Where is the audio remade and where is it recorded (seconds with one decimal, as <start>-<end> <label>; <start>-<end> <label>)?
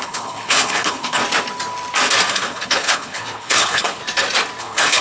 0.0-1.2 remade; 1.2-2.3 recorded; 2.3-4.0 remade; 4.0-4.6 recorded; 4.6-5.0 remade